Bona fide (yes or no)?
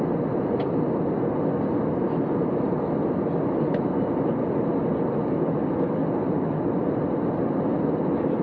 yes